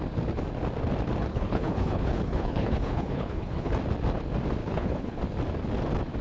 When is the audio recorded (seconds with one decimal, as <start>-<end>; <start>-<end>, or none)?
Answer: 0.0-1.3; 3.7-4.6; 5.2-6.2